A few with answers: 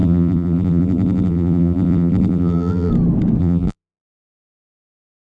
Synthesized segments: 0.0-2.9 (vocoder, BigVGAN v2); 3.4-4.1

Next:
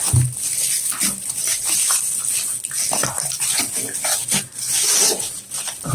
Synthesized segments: 3.0-3.6 (vocoder, BigVGAN v2)

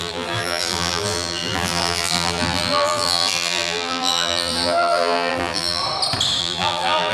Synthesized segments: 0.0-5.8 (vocoder, BigVGAN v2); 6.4-7.1

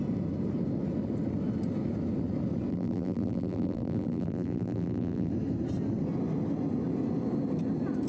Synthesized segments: 2.7-5.3 (vocoder, BigVGAN v2)

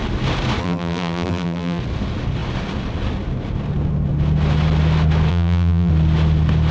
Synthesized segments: 0.6-1.8 (vocoder, BigVGAN v2); 5.3-5.9

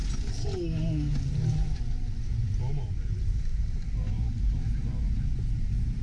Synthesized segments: 1.2-6.0 (vocoder, BigVGAN v2)